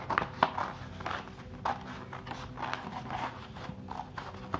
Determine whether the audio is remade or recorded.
recorded